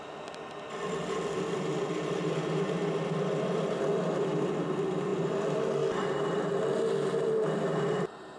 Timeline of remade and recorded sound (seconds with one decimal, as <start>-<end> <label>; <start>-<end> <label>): 0.0-8.4 recorded